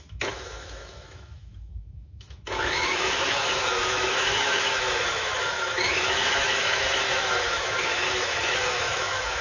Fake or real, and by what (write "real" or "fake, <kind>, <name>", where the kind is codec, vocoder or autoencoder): fake, autoencoder, DAC-VAE